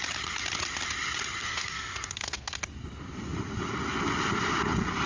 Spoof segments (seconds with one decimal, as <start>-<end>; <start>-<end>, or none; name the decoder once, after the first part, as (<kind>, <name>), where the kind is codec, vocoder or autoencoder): 1.4-2.6 (codec, SNAC)